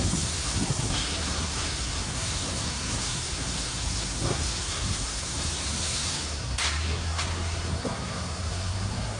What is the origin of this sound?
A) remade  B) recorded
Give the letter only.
A